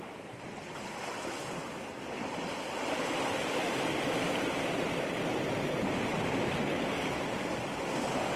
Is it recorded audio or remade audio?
recorded